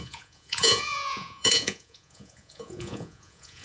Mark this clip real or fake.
fake